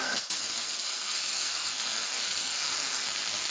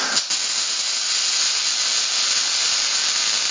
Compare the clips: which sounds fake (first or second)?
first